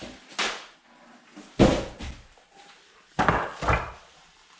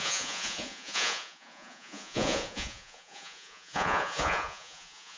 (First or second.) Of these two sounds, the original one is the first